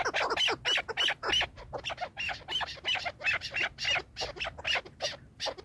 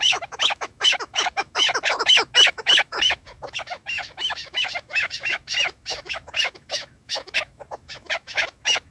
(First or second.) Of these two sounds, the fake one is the second